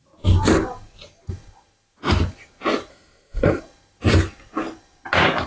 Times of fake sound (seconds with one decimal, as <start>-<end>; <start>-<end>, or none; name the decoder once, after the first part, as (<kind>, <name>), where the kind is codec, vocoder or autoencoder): 2.9-3.6 (codec, SNAC)